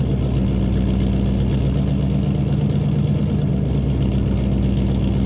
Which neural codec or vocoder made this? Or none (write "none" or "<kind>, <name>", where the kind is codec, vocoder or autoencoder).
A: none